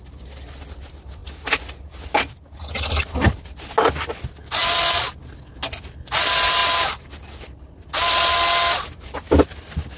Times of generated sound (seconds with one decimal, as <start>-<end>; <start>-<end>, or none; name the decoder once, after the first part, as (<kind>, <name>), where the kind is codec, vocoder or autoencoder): none